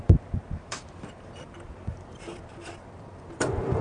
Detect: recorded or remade remade